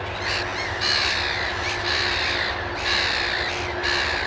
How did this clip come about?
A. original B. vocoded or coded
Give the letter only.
A